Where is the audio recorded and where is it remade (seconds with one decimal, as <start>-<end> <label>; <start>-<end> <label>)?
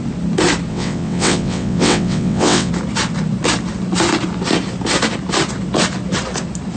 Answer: 0.0-0.7 recorded; 0.7-2.7 remade; 2.7-6.8 recorded